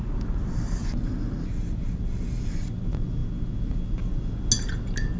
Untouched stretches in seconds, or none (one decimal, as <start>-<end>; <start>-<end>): 0.0-5.2